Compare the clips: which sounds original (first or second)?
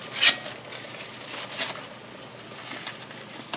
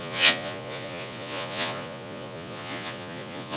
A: first